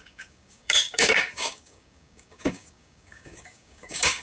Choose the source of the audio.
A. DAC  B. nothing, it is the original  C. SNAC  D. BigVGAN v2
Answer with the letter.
A